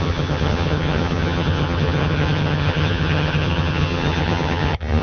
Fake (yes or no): yes